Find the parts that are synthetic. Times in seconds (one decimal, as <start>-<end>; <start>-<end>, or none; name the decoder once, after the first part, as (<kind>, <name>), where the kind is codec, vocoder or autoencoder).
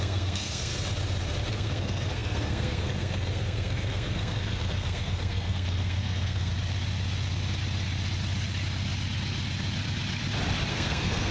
0.0-0.7 (codec, SNAC); 1.5-6.5; 10.7-11.3